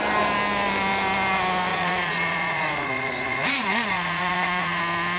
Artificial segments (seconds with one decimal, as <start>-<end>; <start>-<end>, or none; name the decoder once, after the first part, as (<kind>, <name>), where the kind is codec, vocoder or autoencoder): 1.7-4.8 (vocoder, Vocos)